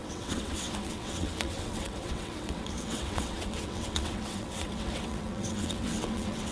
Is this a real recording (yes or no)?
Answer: no